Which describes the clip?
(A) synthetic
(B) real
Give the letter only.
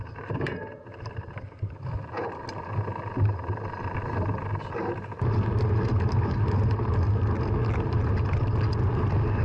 B